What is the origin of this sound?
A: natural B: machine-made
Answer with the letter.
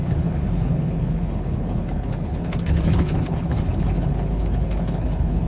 B